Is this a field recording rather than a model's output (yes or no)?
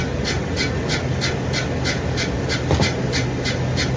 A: yes